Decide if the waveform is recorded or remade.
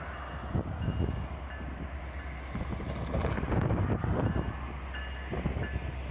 recorded